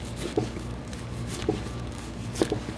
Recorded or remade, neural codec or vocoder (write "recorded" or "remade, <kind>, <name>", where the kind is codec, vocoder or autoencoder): remade, codec, DAC